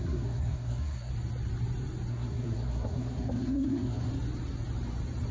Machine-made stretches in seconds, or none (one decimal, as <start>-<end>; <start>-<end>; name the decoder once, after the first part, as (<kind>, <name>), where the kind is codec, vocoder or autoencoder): 0.0-1.1 (codec, SNAC); 2.1-4.1